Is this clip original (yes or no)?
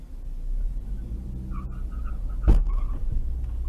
yes